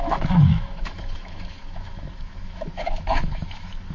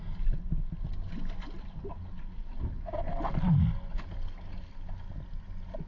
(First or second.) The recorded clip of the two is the second